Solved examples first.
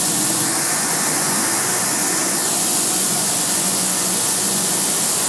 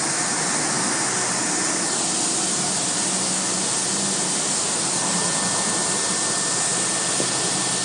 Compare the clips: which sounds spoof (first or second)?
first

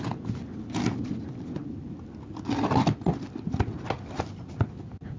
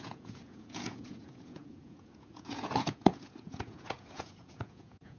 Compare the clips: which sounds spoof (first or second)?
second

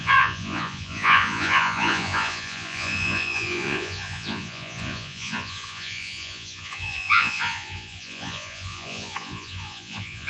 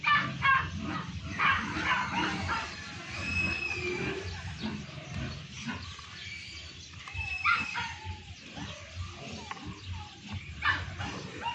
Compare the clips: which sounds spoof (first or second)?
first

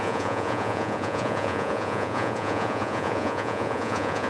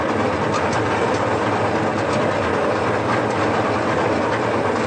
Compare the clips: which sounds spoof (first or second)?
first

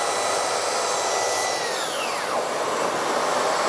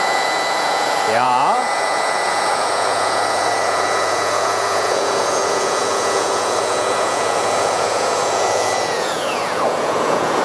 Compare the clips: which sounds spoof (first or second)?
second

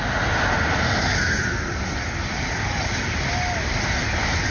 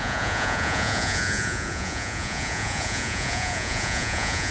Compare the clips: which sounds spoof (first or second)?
second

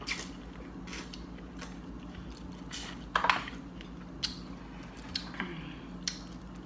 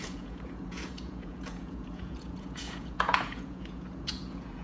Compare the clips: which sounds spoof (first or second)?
second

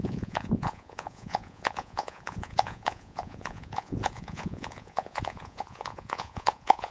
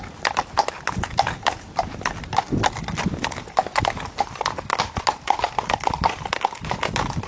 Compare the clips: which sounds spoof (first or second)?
first